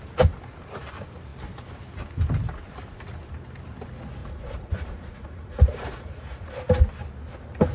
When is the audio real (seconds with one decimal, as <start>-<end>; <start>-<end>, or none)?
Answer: 0.0-4.2; 6.5-7.7